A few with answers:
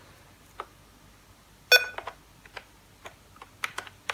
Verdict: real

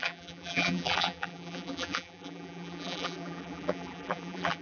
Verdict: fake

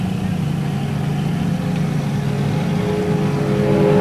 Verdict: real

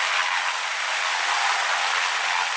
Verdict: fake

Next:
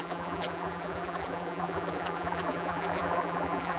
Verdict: fake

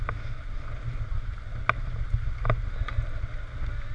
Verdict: real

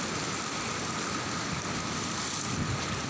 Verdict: real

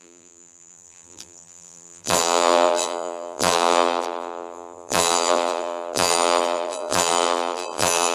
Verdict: fake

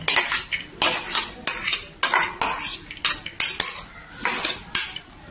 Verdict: real